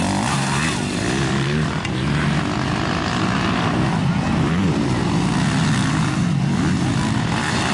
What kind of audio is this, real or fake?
real